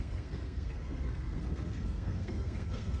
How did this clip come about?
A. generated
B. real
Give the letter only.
A